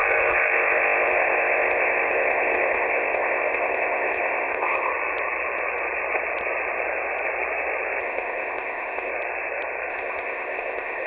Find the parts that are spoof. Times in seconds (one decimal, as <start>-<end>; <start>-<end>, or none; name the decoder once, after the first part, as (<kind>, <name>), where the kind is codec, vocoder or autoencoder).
0.0-4.9 (codec, ZipCodec); 8.0-9.1; 9.9-11.1